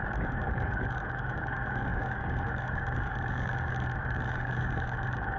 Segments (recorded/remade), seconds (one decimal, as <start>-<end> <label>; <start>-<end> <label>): 0.0-5.4 remade